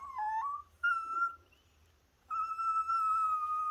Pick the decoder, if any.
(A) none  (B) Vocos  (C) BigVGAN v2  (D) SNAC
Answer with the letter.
C